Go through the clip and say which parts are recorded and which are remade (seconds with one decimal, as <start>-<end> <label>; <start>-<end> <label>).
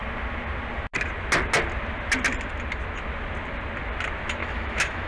0.0-4.4 recorded; 4.4-5.1 remade